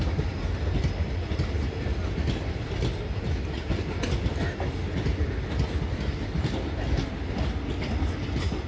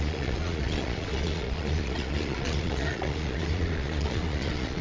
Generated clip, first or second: second